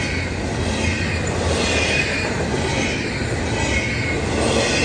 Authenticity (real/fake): real